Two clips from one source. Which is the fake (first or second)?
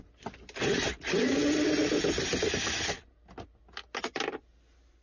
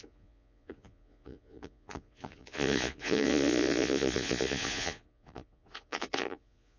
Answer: second